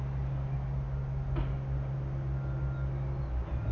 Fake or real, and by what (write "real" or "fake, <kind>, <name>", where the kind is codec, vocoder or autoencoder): real